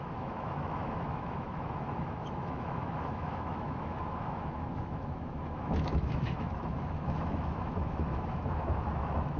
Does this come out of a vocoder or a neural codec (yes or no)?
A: yes